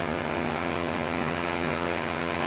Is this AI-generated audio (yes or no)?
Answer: yes